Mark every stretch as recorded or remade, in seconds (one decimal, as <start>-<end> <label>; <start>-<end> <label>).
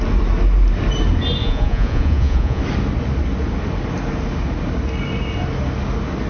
0.0-1.4 recorded; 1.4-2.6 remade; 2.6-6.3 recorded